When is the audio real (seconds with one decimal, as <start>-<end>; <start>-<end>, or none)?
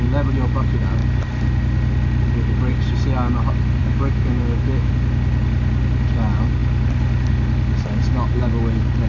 0.0-3.8; 4.9-9.1